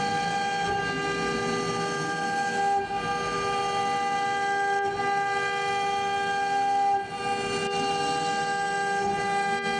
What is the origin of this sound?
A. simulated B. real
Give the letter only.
B